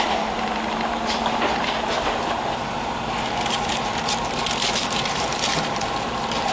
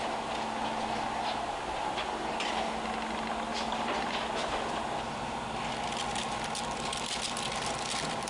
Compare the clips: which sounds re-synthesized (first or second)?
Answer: first